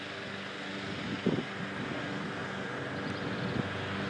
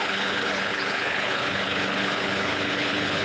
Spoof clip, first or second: second